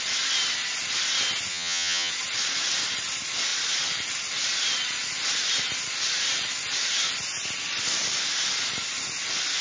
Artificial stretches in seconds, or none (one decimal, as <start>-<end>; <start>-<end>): 1.5-2.1